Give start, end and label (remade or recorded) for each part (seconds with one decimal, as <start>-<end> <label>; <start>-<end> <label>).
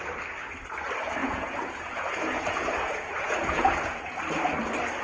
0.0-1.2 recorded; 1.2-4.2 remade; 4.2-5.0 recorded